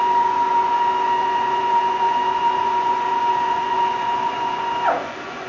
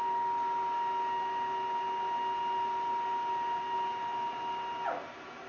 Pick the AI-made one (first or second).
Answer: first